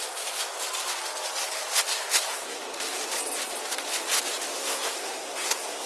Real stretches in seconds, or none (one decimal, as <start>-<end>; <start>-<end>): 0.0-1.9; 2.6-4.6